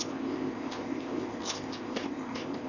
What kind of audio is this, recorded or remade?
remade